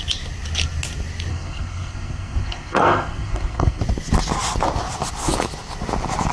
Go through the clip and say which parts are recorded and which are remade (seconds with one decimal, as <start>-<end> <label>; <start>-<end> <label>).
0.0-1.3 recorded; 1.3-3.8 remade; 3.8-6.3 recorded